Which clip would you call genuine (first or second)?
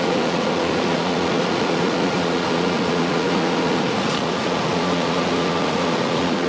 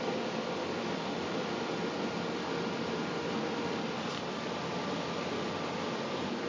second